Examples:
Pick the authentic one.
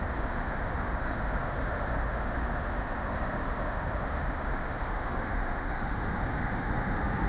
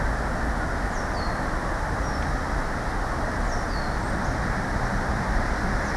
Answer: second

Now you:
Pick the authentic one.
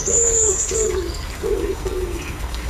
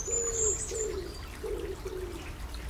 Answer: second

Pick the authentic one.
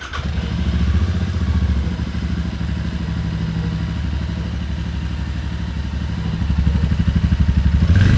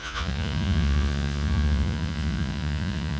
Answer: first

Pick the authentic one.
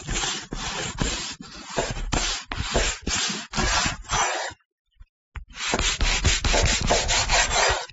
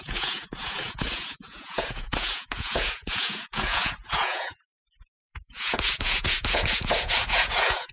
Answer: first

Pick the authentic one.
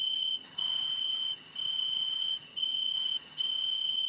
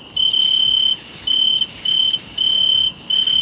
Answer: second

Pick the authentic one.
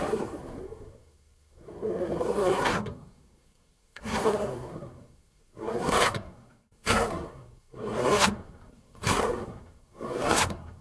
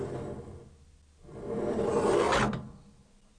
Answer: second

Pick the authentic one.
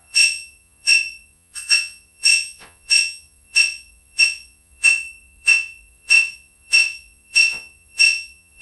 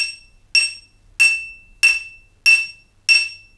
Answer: second